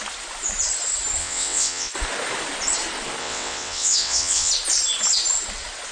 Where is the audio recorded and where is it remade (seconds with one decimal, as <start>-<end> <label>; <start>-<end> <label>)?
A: 0.0-1.2 recorded; 1.2-1.9 remade; 1.9-3.2 recorded; 3.2-4.5 remade; 4.5-5.9 recorded

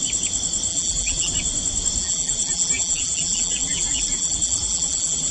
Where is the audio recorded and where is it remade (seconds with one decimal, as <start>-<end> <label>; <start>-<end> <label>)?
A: 0.0-0.7 recorded; 0.7-1.3 remade; 1.3-2.0 recorded; 2.0-5.3 remade

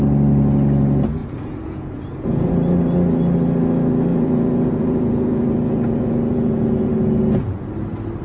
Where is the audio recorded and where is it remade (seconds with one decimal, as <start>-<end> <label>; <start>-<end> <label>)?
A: 0.0-1.2 recorded; 1.2-2.5 remade; 2.5-4.1 recorded; 4.1-7.7 remade; 7.7-8.2 recorded